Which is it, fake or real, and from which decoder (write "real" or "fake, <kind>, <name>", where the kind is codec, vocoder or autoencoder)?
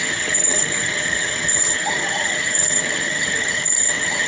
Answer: fake, vocoder, HiFi-GAN